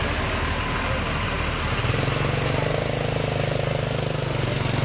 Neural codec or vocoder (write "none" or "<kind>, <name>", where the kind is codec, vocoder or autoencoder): none